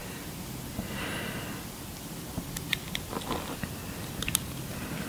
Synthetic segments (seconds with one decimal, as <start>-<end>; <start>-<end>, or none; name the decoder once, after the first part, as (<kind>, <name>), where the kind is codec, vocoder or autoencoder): 3.1-3.8 (vocoder, BigVGAN v2); 4.4-5.1